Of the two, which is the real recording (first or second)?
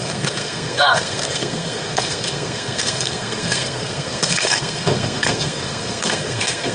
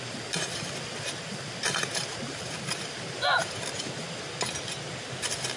second